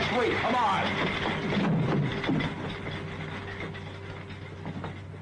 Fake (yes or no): no